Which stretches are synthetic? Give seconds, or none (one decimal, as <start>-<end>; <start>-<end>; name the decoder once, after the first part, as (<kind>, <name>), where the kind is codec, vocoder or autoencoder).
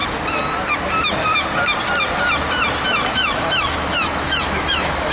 3.1-5.1 (autoencoder, DAC-VAE)